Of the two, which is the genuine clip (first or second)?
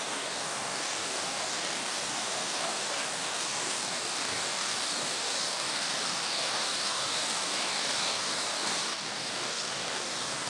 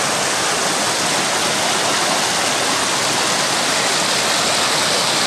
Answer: second